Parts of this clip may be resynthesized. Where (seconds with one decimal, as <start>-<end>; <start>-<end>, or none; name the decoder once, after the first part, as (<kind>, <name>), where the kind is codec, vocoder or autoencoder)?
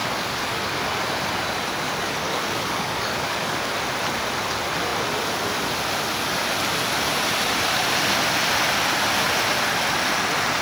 0.0-0.6 (codec, DAC); 2.0-3.7